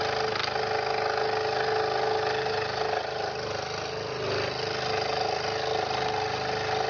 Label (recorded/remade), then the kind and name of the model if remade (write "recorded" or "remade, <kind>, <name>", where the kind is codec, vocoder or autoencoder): recorded